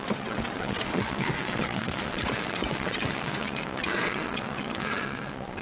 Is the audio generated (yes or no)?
yes